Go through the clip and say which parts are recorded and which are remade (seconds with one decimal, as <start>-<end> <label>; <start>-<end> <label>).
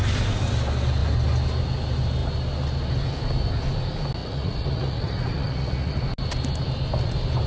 0.0-4.2 recorded; 4.2-6.0 remade; 6.0-7.5 recorded